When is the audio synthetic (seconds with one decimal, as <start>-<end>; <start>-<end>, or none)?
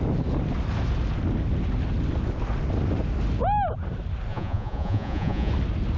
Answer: 4.3-5.5